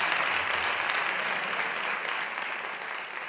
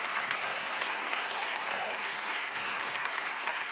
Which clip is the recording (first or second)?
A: first